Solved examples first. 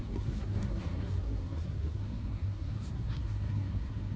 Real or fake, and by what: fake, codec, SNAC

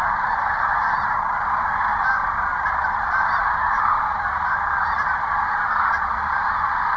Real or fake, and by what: fake, vocoder, BigVGAN v2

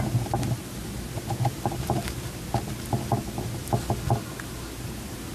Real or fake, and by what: real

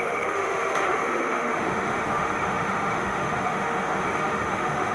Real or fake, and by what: fake, autoencoder, DAC-VAE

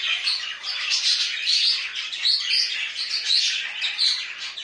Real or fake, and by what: real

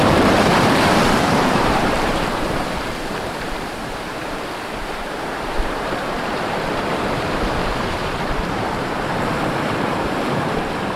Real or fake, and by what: fake, vocoder, BigVGAN v2